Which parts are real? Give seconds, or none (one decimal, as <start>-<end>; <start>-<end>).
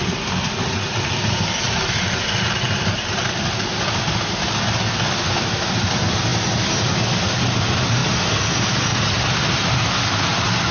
0.0-10.7